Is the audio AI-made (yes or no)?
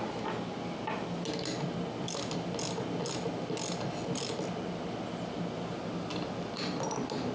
no